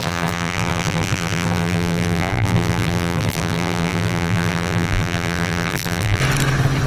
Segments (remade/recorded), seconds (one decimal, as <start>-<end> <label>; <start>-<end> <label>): 0.0-6.2 remade; 6.2-6.9 recorded